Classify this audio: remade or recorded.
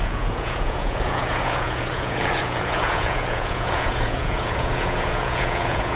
remade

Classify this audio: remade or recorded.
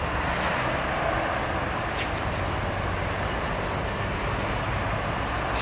recorded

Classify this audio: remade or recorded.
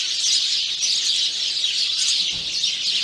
recorded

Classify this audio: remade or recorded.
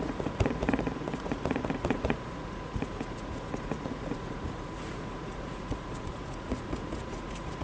remade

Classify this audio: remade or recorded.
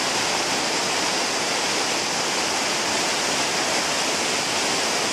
recorded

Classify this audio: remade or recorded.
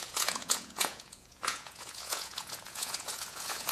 remade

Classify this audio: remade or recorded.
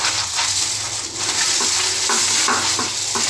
recorded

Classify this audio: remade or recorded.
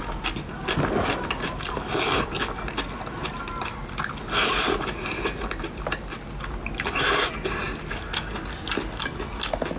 recorded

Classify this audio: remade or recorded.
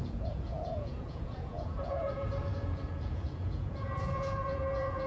remade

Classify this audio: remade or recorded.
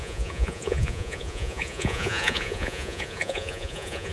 remade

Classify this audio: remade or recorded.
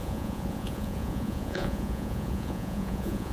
remade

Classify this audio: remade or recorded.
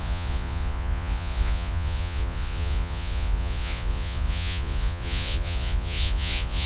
remade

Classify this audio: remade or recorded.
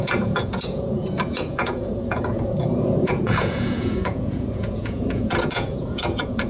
remade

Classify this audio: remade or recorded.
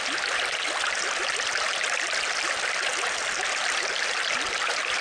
recorded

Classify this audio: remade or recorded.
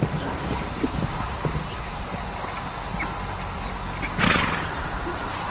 recorded